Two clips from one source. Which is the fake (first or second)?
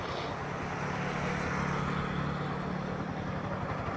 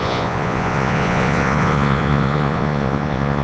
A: second